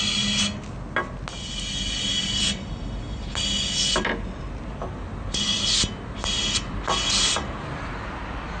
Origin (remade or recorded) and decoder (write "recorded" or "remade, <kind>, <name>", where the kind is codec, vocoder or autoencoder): recorded